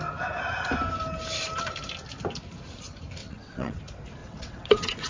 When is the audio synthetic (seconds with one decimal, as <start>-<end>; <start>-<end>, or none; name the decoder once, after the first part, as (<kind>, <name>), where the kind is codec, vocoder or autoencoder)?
3.2-3.8 (vocoder, WaveNeXt); 4.2-5.1